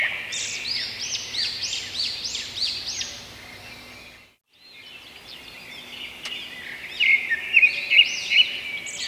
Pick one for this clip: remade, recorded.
recorded